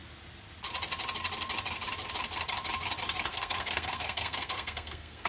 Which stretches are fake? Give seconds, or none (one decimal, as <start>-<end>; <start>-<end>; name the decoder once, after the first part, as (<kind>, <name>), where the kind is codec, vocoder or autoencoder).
3.3-5.3 (codec, SNAC)